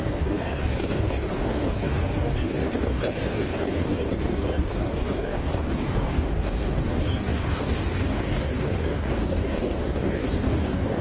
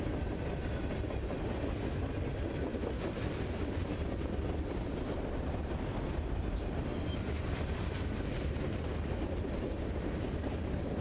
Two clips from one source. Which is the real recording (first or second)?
second